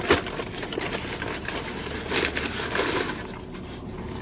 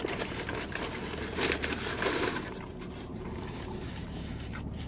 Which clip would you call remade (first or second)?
second